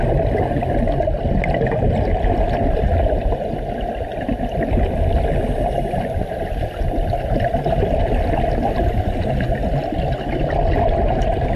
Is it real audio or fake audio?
real